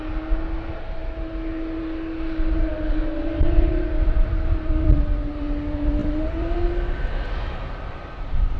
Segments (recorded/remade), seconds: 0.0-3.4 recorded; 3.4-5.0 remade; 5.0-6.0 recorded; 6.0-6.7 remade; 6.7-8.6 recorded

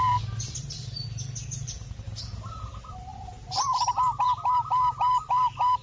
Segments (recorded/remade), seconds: 0.0-5.8 remade

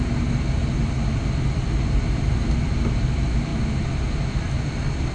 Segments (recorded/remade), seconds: 0.0-5.1 recorded

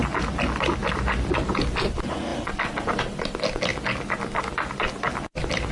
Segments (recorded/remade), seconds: 0.0-0.8 recorded; 0.8-1.3 remade; 1.3-2.3 recorded; 2.3-3.0 remade; 3.0-5.7 recorded

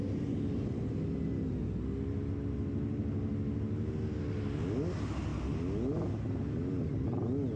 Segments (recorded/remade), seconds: 0.0-7.6 recorded

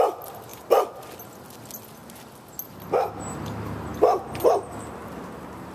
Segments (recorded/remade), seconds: 0.0-3.9 recorded; 3.9-4.5 remade; 4.5-5.7 recorded